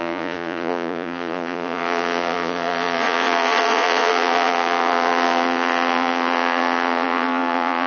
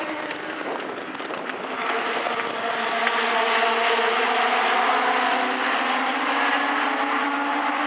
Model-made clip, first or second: first